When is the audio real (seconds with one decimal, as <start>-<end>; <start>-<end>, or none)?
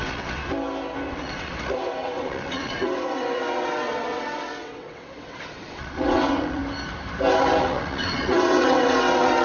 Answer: 0.4-1.1; 6.6-7.6